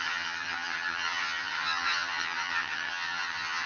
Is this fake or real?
fake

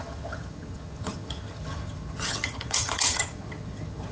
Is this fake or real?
fake